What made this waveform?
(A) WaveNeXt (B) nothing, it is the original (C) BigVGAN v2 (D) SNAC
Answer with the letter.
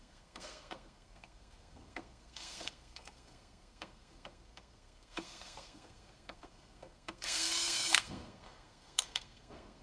D